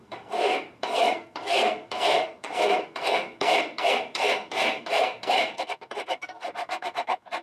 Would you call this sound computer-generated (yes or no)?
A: yes